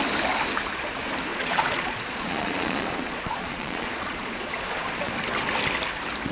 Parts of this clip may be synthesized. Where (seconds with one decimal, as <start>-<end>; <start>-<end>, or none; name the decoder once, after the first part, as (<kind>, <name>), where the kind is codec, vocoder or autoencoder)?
1.3-5.1 (vocoder, Vocos)